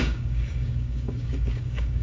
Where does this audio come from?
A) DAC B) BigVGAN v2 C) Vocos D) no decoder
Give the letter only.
A